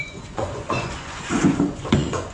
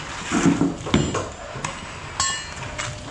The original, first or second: second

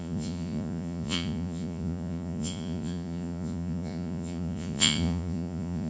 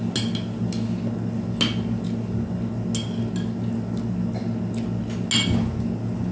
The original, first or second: second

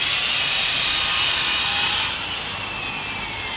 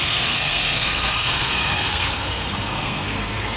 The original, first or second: first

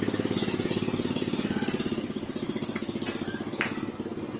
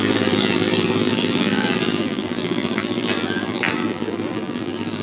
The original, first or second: first